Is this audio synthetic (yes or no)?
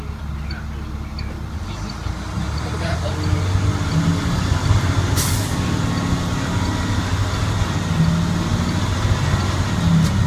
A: no